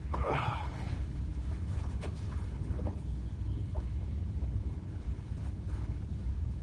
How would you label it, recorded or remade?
remade